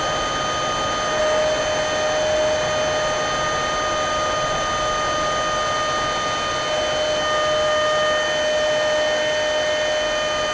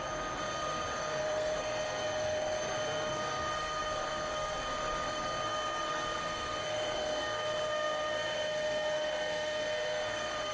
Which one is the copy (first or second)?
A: second